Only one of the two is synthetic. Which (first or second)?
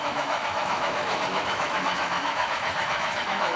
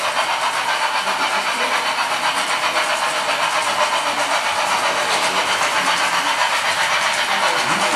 first